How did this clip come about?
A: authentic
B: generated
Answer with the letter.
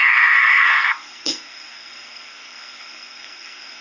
B